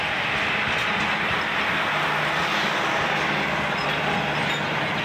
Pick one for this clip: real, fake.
real